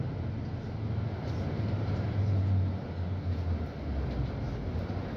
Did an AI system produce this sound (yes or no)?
no